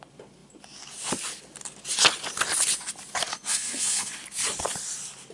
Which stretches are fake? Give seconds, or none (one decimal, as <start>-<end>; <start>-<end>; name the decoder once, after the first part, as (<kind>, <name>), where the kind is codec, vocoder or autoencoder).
3.3-4.1 (codec, SNAC)

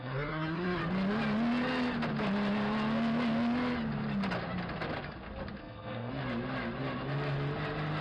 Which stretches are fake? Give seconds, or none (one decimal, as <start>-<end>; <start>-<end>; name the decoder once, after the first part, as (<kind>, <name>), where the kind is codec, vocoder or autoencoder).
0.0-0.8 (codec, SNAC); 5.6-6.1

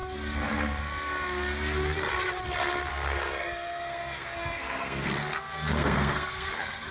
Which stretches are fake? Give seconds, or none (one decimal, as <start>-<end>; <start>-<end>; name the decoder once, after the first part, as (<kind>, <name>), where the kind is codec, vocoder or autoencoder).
2.9-6.9 (codec, SNAC)

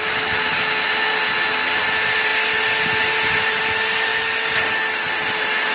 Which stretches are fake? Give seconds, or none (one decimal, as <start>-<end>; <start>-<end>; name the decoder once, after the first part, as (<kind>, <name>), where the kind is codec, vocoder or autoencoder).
none

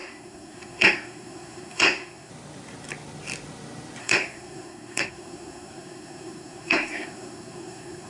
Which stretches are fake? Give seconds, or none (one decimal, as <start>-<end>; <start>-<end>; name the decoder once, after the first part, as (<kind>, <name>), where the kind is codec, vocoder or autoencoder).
0.0-2.3 (codec, SNAC); 4.0-8.1

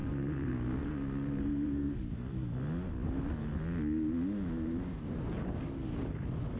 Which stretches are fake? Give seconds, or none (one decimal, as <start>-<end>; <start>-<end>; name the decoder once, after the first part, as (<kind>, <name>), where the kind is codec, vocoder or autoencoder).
0.0-1.9 (codec, SNAC)

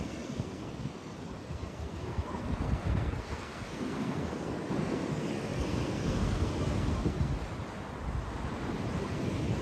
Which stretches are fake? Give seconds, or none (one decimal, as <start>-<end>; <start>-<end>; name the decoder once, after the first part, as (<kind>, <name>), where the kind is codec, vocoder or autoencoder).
0.0-7.3 (codec, SNAC); 9.0-9.6